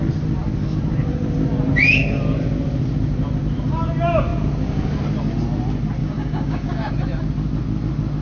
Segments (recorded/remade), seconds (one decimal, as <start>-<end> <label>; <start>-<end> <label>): 0.0-6.0 recorded; 6.0-6.9 remade; 6.9-8.2 recorded